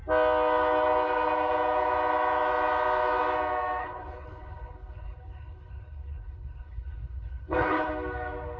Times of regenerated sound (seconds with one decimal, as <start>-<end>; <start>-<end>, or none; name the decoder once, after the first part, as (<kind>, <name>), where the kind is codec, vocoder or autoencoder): 3.8-7.9 (codec, HILCodec)